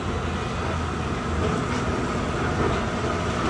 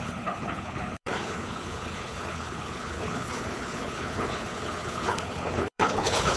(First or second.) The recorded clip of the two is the first